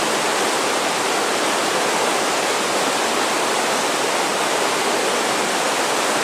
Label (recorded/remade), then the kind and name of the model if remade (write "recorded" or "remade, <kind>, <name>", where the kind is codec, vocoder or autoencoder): recorded